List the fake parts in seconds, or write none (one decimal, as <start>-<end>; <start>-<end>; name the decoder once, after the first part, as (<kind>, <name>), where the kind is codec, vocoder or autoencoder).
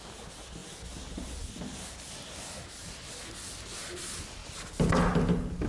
none